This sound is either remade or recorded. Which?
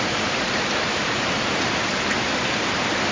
remade